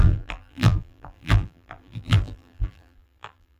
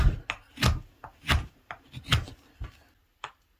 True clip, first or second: second